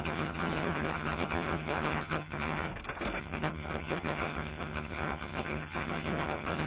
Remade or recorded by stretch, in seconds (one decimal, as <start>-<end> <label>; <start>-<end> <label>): 0.0-2.7 remade; 2.7-3.2 recorded; 3.2-6.7 remade